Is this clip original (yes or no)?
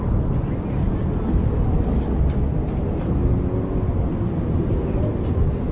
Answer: yes